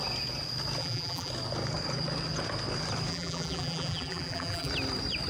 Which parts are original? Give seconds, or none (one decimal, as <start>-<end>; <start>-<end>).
0.0-0.8; 1.3-3.1; 4.7-5.3

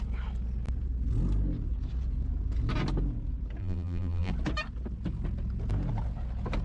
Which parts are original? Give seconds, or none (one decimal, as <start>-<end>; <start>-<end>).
0.0-3.6; 4.3-6.6

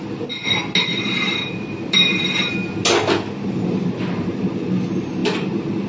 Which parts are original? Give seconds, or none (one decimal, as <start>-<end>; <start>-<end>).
0.0-0.9; 2.5-5.9

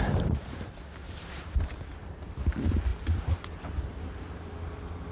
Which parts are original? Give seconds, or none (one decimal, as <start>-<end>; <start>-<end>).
2.9-3.7

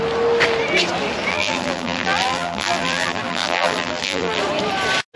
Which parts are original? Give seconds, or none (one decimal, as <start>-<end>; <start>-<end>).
0.0-1.3; 4.4-5.2

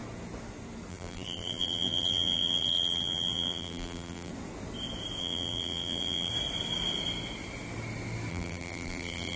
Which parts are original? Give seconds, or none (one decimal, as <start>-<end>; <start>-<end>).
0.0-0.9; 4.3-5.2; 6.3-8.3